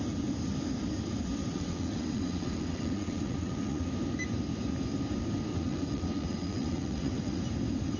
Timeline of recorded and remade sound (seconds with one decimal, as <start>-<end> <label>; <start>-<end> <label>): 0.0-1.5 recorded; 1.5-3.9 remade; 3.9-5.5 recorded; 5.5-7.4 remade; 7.4-8.0 recorded